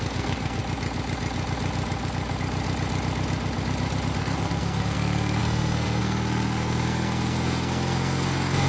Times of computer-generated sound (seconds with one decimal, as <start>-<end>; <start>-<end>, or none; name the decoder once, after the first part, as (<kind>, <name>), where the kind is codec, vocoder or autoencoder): 0.0-0.6 (codec, SNAC); 4.2-8.7